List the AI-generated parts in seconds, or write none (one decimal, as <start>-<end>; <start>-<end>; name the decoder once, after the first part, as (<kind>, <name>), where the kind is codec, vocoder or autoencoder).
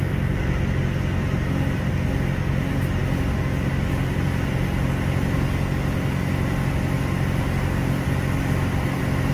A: none